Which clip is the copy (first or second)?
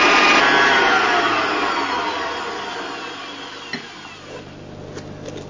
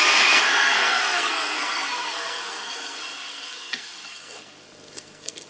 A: second